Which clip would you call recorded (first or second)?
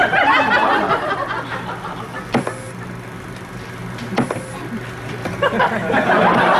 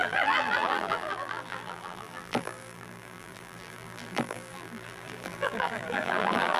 first